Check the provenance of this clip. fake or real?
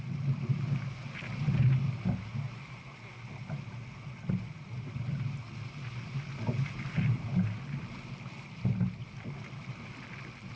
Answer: real